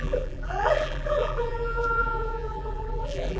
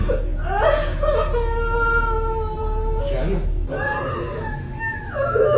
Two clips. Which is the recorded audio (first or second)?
second